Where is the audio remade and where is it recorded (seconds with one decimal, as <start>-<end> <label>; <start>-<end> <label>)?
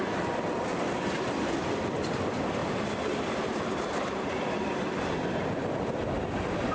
0.0-6.7 recorded